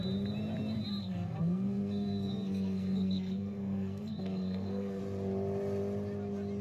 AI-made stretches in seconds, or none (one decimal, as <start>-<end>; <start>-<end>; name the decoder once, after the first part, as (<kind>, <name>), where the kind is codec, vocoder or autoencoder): 1.0-5.0 (codec, SNAC)